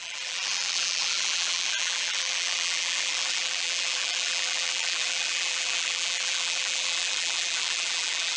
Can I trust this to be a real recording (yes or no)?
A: no